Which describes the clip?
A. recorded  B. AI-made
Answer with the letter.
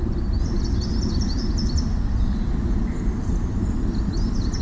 A